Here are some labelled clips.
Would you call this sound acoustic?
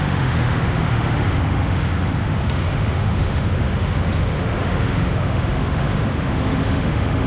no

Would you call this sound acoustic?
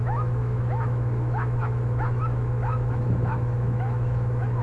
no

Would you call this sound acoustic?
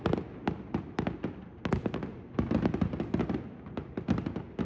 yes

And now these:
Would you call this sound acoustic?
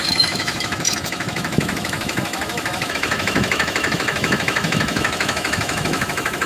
no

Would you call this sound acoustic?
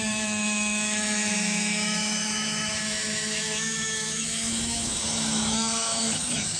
no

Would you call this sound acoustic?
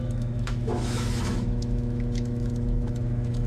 no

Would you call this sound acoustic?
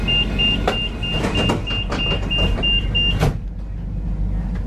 yes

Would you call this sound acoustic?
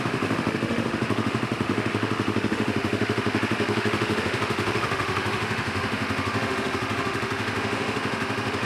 no